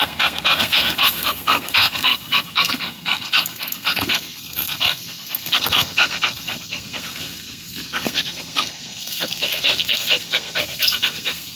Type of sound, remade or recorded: remade